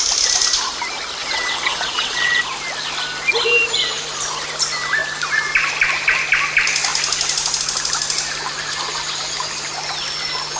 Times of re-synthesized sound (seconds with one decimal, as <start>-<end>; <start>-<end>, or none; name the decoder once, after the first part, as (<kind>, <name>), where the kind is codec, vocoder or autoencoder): 1.2-2.4 (vocoder, WaveNeXt)